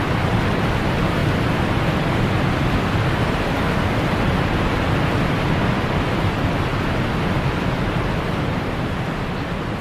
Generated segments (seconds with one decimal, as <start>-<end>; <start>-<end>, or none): none